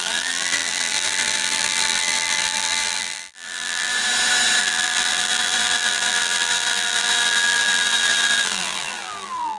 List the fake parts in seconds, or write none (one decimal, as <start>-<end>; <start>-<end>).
0.0-3.9; 4.6-9.6